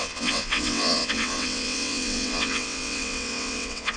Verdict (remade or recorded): remade